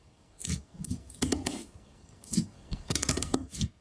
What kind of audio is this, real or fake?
fake